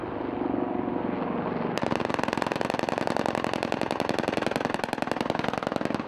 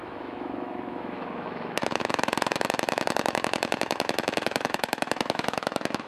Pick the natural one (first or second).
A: first